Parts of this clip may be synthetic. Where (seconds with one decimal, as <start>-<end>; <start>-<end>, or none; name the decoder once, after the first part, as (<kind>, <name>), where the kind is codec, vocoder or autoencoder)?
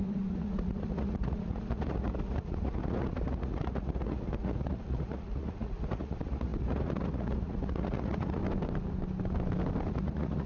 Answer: 0.0-8.4 (vocoder, Vocos); 9.9-10.5